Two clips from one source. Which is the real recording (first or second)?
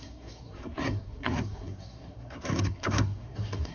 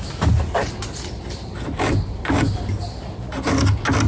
second